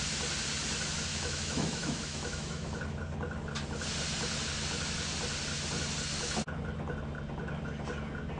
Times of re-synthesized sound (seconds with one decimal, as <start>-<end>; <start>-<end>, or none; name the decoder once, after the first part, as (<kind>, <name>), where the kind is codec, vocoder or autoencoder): 1.1-2.8 (autoencoder, DAC-VAE)